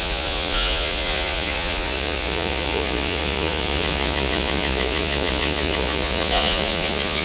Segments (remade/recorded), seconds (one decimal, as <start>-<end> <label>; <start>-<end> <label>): 0.0-7.2 remade